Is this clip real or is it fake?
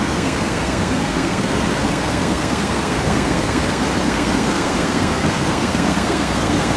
fake